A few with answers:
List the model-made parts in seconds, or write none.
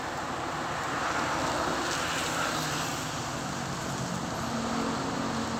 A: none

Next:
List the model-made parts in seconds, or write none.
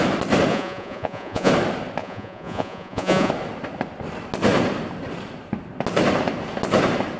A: 0.5-1.5 (vocoder, Vocos); 2.0-3.3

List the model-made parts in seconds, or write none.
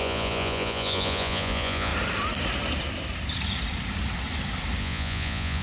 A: 0.0-1.9 (vocoder, Vocos); 4.8-5.6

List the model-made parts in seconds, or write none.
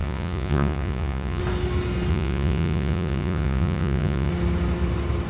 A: 0.0-1.4 (vocoder, Vocos); 2.1-4.3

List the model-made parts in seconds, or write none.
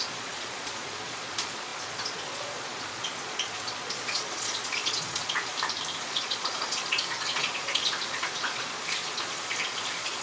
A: 0.0-5.5 (vocoder, Vocos); 6.0-10.2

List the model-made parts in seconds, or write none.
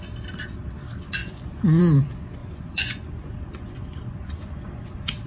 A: 1.2-1.8 (vocoder, Vocos); 2.4-5.3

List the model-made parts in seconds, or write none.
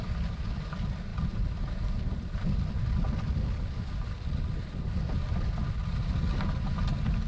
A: none